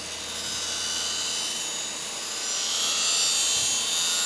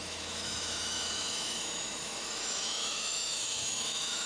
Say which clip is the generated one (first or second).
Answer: second